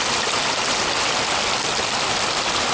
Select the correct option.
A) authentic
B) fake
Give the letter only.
A